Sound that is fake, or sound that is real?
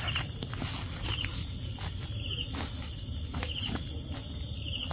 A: real